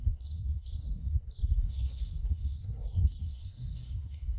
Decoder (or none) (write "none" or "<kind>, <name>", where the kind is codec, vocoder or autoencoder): codec, SNAC